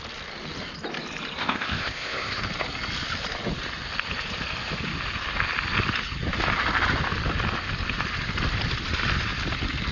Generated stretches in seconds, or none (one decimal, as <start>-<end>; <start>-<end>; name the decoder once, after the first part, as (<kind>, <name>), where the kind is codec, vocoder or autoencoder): 1.4-2.4 (codec, ZipCodec)